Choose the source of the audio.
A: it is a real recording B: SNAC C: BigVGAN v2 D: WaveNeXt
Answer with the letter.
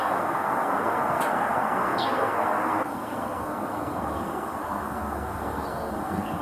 B